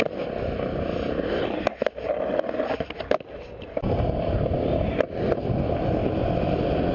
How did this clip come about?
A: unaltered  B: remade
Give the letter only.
A